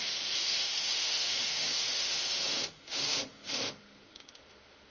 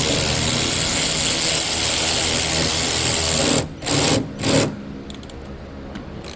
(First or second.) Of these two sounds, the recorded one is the second